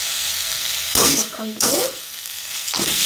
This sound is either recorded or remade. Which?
remade